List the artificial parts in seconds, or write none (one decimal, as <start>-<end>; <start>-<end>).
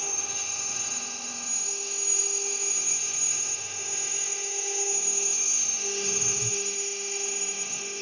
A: 0.0-8.0